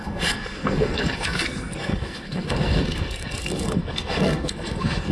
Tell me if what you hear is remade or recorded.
remade